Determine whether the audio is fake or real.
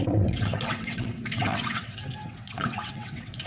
fake